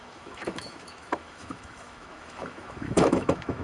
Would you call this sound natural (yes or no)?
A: no